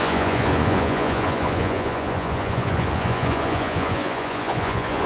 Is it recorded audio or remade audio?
remade